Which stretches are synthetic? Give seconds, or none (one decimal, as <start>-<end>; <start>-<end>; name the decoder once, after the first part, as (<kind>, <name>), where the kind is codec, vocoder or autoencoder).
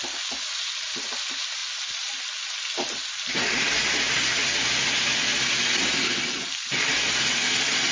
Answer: none